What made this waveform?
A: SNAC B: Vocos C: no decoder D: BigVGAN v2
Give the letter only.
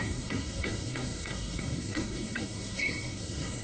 A